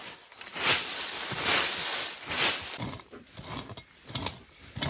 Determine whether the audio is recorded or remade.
recorded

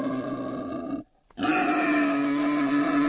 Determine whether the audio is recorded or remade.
recorded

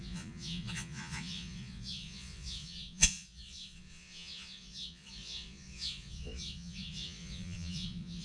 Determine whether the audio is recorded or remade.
remade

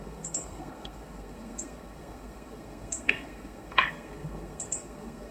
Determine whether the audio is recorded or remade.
remade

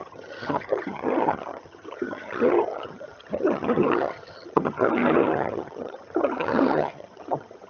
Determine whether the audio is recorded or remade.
remade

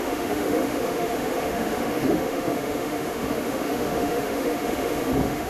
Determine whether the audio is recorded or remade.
remade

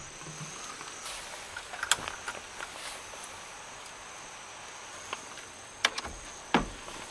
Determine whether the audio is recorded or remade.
recorded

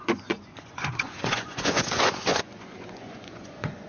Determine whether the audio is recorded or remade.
remade